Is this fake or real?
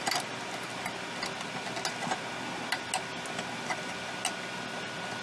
real